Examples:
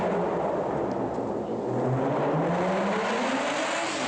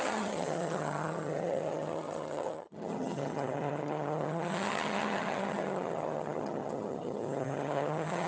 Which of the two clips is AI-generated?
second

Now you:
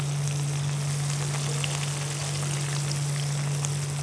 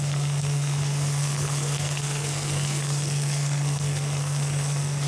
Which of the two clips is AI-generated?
second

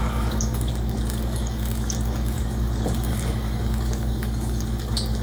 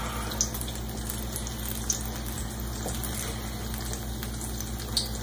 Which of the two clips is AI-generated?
first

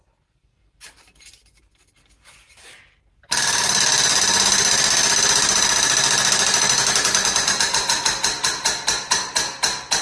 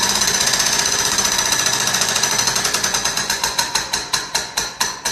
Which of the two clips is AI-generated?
second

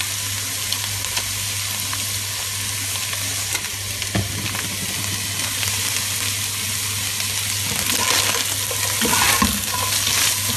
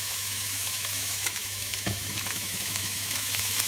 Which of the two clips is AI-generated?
second